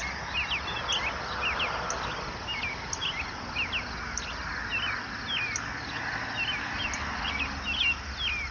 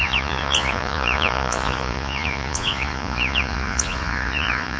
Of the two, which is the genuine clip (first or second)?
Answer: first